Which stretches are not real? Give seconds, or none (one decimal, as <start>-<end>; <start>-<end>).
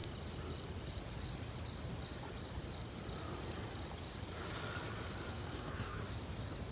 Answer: 5.3-6.0